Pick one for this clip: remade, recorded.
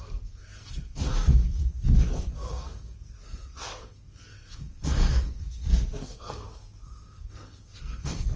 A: remade